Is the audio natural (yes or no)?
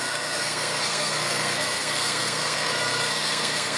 no